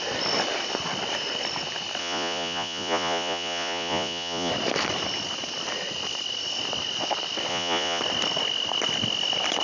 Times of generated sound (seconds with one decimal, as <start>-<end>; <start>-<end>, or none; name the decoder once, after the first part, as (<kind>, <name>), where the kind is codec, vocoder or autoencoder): 2.0-4.5 (vocoder, Vocos); 7.5-8.0